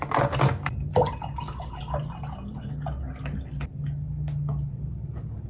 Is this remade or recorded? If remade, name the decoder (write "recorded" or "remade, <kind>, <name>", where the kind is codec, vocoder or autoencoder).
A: recorded